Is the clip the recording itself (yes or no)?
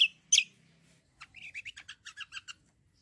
yes